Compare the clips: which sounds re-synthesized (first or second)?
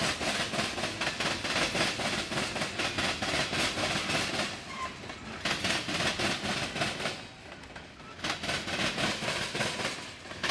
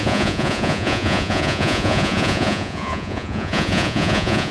second